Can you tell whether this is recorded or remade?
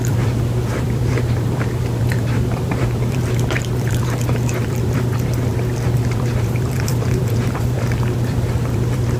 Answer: remade